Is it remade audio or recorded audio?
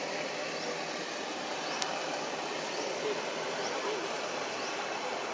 recorded